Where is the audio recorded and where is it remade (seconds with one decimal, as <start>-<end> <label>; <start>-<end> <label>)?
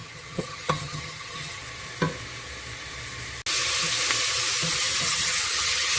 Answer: 0.0-1.6 remade; 1.6-4.8 recorded; 4.8-6.0 remade